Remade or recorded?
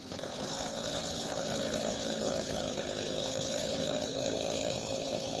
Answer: remade